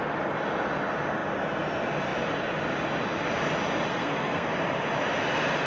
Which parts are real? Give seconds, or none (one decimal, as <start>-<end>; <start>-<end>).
0.0-3.9; 4.5-5.7